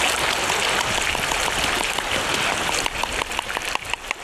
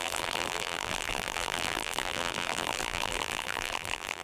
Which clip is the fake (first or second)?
second